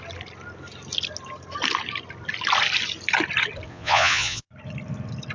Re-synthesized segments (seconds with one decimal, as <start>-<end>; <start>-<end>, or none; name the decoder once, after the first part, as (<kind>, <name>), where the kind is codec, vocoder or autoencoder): 3.7-4.5 (vocoder, Vocos)